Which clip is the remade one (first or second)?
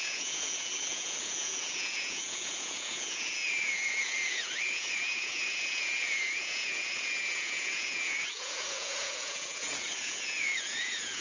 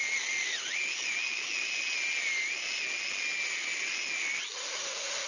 first